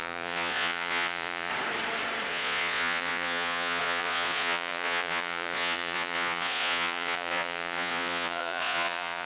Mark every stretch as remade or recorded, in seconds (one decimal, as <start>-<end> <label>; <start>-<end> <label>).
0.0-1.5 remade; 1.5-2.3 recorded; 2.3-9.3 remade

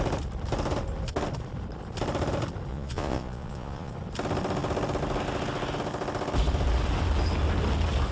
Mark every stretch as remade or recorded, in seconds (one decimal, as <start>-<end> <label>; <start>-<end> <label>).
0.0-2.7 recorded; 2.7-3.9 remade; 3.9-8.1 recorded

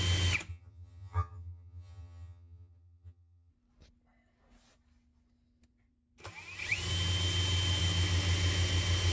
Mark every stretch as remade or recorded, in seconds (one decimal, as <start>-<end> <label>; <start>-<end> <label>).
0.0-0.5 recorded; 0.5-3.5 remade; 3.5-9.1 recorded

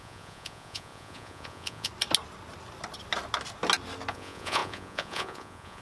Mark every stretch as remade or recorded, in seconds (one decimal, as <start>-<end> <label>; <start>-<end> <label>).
0.0-1.9 remade; 1.9-4.1 recorded; 4.1-5.8 remade

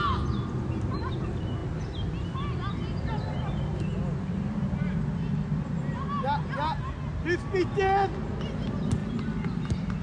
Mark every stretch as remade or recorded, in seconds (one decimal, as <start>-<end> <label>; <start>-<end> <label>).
0.0-10.0 recorded

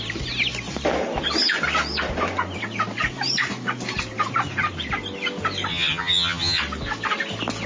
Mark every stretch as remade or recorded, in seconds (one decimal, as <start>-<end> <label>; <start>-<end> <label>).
0.0-5.7 recorded; 5.7-6.6 remade; 6.6-7.7 recorded

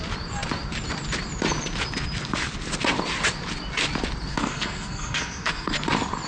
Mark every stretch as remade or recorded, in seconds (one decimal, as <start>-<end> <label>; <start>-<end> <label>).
0.0-4.3 recorded; 4.3-5.7 remade; 5.7-6.3 recorded